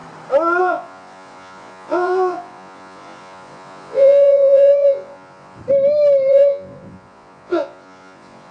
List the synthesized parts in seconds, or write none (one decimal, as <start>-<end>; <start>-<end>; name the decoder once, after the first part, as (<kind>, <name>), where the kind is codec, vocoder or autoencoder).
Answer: 0.6-5.6 (vocoder, Vocos); 6.3-8.5